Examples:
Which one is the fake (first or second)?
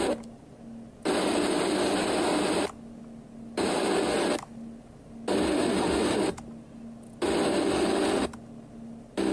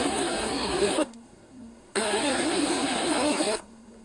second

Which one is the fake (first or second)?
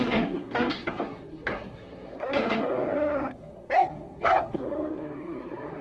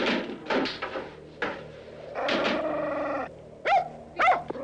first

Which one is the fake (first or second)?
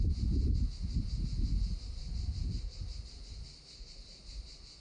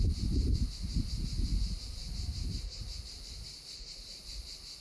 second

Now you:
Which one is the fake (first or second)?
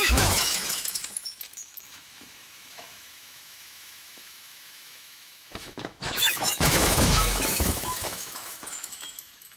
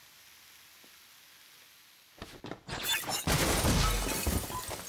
first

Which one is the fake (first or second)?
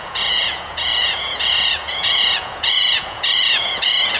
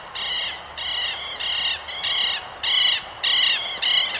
first